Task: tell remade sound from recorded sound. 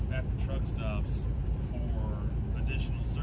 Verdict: recorded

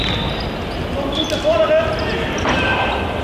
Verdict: recorded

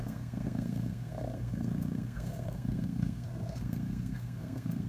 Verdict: remade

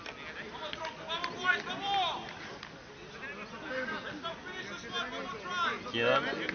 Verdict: recorded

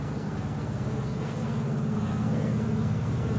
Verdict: remade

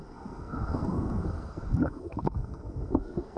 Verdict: remade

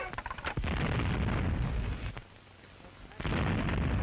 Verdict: recorded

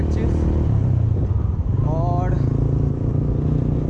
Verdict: recorded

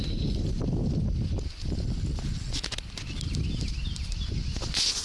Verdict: recorded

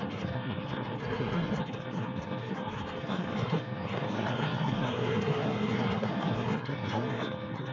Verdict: remade